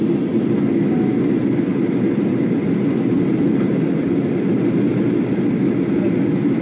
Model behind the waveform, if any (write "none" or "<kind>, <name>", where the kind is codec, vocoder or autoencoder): none